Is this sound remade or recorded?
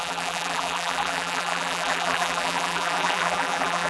remade